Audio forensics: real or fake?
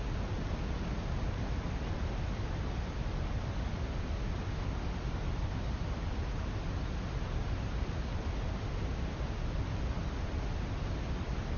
real